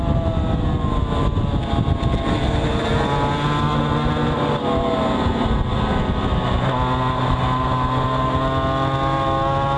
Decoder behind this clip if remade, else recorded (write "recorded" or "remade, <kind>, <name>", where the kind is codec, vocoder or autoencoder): recorded